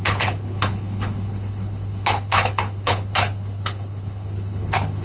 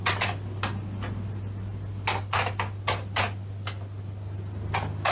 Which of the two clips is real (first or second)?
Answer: second